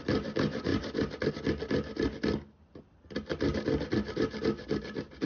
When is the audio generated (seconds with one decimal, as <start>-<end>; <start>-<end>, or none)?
none